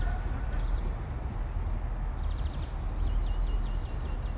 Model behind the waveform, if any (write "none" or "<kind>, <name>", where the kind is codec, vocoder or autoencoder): none